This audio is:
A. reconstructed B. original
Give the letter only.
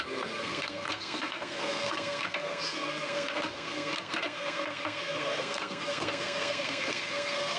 A